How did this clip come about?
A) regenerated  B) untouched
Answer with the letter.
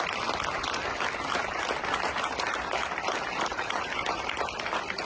B